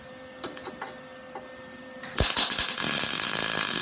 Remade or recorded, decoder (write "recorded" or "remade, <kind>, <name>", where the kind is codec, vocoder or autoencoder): recorded